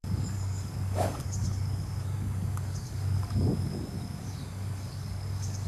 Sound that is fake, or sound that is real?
fake